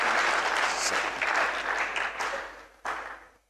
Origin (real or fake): real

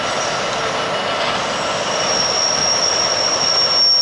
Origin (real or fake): real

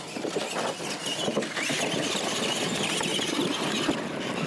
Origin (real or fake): real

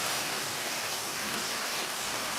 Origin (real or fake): fake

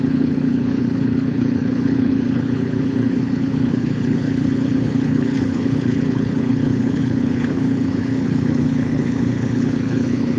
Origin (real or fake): fake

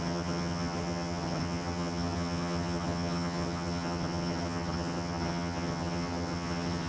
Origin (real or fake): fake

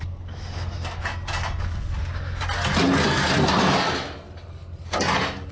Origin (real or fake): real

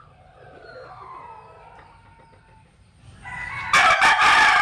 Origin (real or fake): real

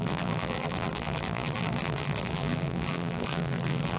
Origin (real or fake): fake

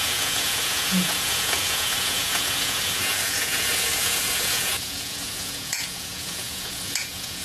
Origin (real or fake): fake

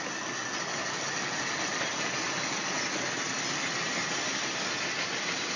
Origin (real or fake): real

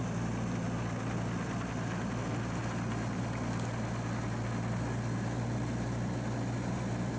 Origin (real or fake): real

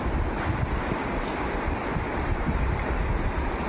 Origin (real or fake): real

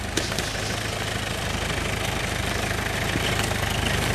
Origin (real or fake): real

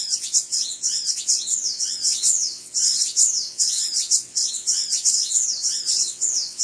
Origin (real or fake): fake